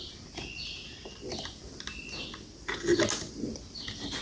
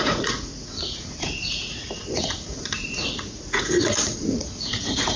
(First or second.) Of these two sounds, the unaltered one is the first